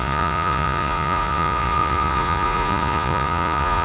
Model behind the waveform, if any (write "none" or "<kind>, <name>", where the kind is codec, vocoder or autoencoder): vocoder, Vocos